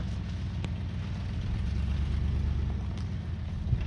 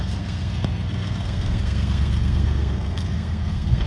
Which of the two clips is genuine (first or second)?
first